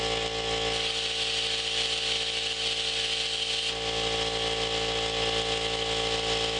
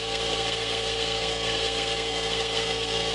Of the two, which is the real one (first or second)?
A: first